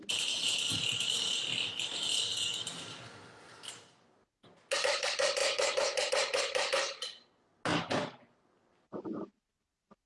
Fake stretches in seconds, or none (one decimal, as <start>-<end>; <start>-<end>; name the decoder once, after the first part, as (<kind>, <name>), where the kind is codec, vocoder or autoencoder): 5.4-6.1 (vocoder, BigVGAN v2)